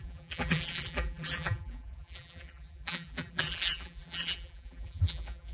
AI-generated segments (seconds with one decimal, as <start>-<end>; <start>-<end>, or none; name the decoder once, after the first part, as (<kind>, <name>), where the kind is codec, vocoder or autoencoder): 0.0-5.5 (vocoder, BigVGAN v2)

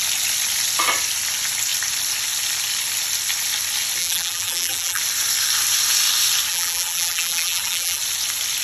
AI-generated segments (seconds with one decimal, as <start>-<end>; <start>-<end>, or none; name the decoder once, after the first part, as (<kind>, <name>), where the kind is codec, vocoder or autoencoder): 4.0-5.0 (vocoder, BigVGAN v2); 6.5-8.0

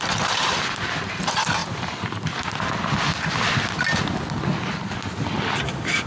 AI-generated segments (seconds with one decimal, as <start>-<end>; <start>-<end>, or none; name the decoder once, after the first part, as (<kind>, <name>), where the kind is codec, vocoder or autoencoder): 1.6-2.2 (vocoder, BigVGAN v2)

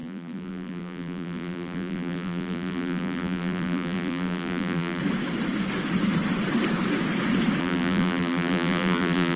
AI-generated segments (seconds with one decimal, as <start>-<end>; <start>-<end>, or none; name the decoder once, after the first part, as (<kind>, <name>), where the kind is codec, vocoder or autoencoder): 0.0-5.0 (vocoder, BigVGAN v2); 7.6-9.4

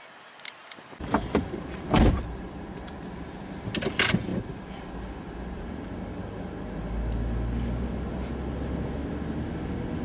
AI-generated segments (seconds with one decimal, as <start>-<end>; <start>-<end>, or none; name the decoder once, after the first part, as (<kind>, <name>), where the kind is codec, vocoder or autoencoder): 0.6-3.7 (vocoder, BigVGAN v2); 4.3-5.7

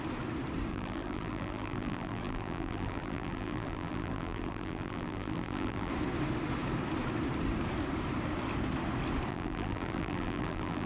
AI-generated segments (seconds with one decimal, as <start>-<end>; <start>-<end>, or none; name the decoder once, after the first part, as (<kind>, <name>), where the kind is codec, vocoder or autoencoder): 0.7-5.9 (vocoder, BigVGAN v2); 9.3-10.9

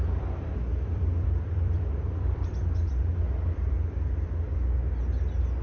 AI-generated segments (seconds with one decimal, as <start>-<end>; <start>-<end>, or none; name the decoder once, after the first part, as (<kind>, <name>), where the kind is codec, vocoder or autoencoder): 0.7-4.1 (vocoder, BigVGAN v2)